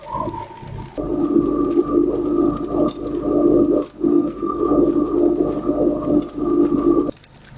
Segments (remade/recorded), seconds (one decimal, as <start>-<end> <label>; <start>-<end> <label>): 0.0-4.1 recorded; 4.1-4.6 remade; 4.6-7.6 recorded